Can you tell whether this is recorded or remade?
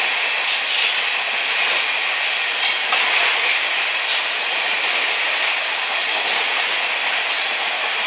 recorded